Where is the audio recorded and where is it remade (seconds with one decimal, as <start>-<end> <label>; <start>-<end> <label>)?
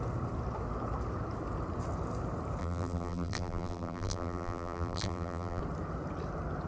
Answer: 0.0-2.6 recorded; 2.6-5.6 remade; 5.6-6.7 recorded